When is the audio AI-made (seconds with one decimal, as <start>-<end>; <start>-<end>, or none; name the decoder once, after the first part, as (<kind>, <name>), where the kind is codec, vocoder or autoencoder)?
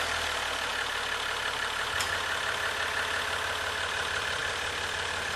0.0-0.7 (vocoder, BigVGAN v2); 3.9-5.4